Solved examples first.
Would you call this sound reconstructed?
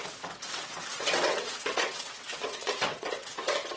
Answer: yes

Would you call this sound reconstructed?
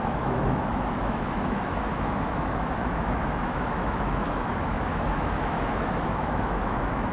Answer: yes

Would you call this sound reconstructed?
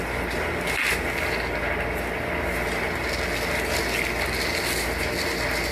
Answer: no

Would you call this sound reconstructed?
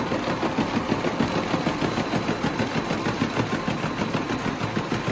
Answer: no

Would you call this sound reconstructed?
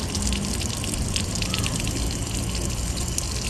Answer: no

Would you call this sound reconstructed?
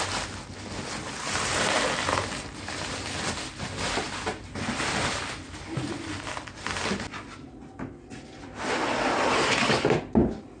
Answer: no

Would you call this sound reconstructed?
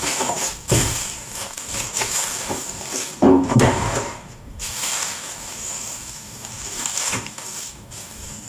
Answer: yes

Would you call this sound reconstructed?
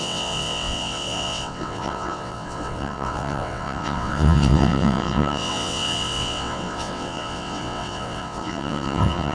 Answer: yes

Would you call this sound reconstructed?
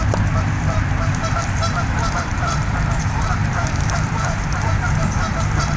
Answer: yes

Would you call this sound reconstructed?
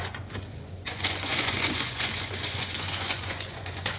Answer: yes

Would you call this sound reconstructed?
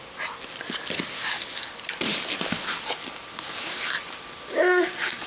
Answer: no